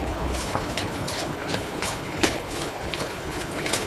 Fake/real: fake